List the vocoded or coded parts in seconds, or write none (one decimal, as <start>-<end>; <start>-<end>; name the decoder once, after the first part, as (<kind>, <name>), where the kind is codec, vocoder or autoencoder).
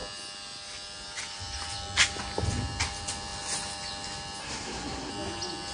4.4-5.1 (codec, SNAC)